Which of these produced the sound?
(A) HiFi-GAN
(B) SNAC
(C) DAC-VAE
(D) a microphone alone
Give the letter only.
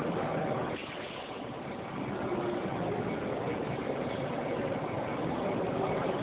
D